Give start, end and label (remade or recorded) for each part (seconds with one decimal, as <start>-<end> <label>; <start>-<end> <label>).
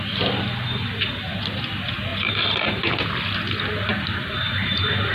0.0-2.1 recorded; 2.1-2.9 remade; 2.9-3.9 recorded; 3.9-5.1 remade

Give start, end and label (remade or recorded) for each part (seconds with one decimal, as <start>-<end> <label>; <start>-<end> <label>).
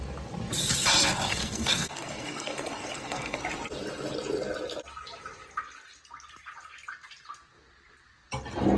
0.0-1.3 recorded; 1.3-3.4 remade; 3.4-8.8 recorded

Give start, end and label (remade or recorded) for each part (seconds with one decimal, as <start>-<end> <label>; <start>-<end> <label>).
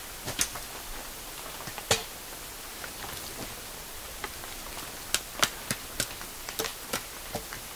0.0-7.8 recorded